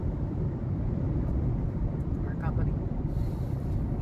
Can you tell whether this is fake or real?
real